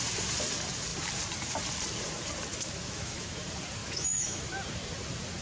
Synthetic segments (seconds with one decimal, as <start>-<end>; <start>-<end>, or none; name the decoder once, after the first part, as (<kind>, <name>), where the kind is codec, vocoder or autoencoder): 2.5-3.4 (autoencoder, DAC-VAE); 3.8-4.4